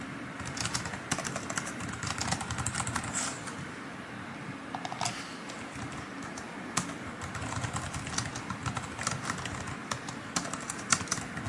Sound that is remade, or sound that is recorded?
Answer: recorded